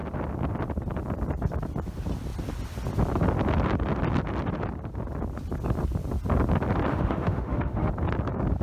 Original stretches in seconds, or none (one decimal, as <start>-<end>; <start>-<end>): 0.0-6.9; 7.9-8.6